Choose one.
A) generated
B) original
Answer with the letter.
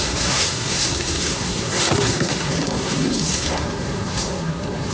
A